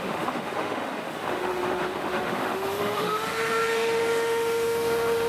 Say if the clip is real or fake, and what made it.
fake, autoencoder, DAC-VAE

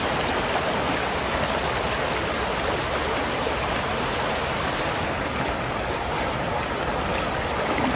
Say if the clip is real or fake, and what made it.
real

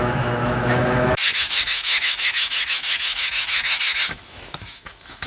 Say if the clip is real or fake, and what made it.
fake, autoencoder, DAC-VAE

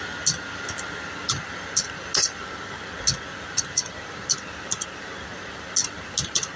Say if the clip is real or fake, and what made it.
real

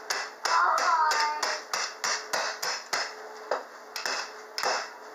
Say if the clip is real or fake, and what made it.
real